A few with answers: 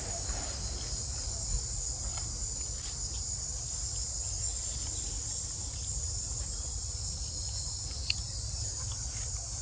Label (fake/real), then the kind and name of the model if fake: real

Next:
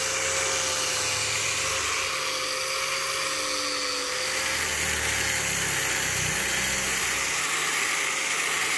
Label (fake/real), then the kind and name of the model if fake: real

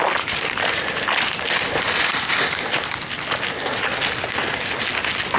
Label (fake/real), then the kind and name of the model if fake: real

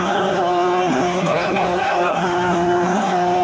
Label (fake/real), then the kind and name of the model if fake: fake, codec, SNAC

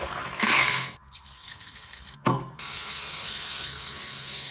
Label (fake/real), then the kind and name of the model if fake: fake, codec, SNAC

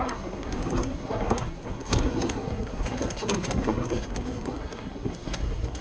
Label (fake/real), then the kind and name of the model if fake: fake, codec, SNAC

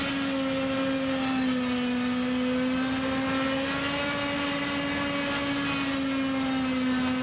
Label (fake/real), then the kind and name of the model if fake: real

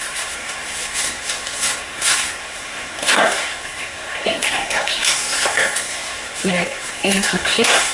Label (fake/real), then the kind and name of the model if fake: fake, codec, SNAC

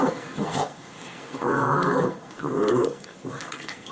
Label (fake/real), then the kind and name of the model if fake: fake, codec, SNAC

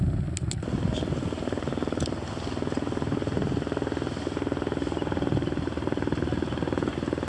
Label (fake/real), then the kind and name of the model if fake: real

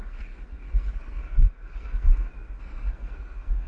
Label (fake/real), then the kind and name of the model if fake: fake, codec, SNAC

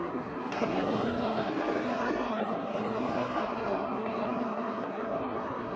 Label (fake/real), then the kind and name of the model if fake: fake, codec, SNAC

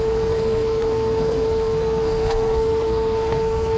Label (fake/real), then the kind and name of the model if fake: fake, codec, SNAC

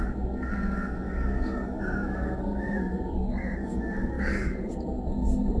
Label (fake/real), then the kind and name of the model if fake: fake, codec, SNAC